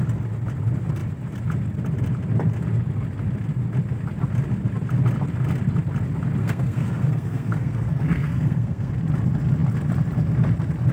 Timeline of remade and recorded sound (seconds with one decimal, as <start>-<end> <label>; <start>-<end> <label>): 0.0-6.4 recorded; 6.4-8.9 remade; 8.9-10.9 recorded